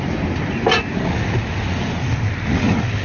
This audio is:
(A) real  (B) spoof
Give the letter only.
A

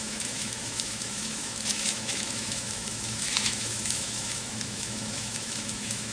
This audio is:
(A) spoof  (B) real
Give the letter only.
A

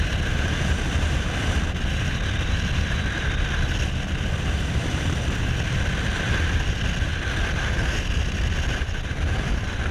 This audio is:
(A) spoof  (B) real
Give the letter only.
B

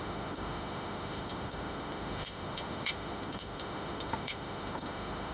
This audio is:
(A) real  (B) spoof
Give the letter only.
B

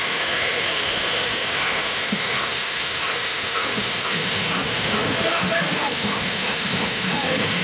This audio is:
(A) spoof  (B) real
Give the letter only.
A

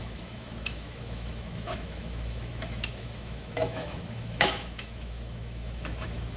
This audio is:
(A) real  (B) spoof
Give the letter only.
B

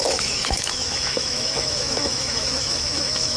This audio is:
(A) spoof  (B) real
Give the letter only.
A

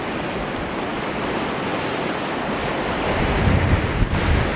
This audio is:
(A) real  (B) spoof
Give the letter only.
A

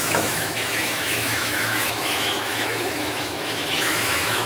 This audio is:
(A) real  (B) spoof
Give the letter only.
B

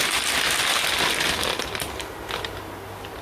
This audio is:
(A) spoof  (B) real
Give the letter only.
B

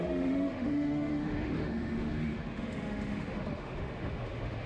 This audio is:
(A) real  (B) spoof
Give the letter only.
B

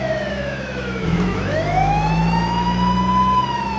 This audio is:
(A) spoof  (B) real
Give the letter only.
A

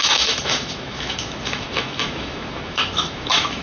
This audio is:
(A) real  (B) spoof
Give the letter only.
B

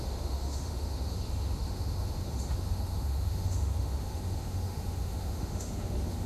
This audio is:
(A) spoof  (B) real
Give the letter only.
A